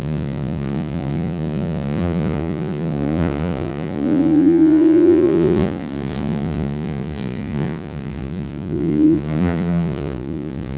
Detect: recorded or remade remade